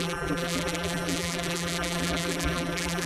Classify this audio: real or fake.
fake